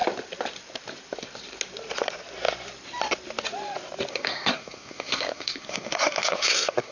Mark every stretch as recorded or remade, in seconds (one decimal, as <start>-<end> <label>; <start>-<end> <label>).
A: 0.0-4.1 recorded; 4.1-6.9 remade